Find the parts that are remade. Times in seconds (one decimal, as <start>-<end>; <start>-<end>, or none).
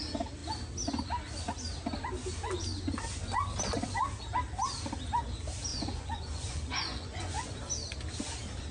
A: 5.7-7.6